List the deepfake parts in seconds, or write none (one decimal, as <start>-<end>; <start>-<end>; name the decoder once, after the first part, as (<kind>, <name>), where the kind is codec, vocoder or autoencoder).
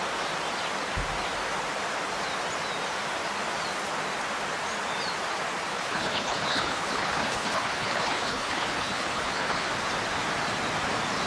5.7-9.7 (codec, HILCodec)